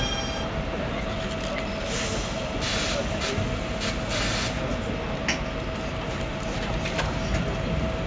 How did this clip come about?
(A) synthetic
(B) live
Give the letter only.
B